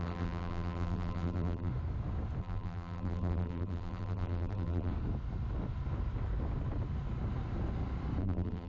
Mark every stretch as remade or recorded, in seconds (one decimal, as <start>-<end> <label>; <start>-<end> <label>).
0.0-1.7 remade; 1.7-2.4 recorded; 2.4-4.9 remade; 4.9-8.2 recorded; 8.2-8.7 remade